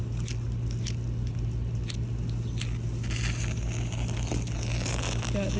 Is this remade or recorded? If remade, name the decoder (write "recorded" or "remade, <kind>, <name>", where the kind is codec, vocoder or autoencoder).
recorded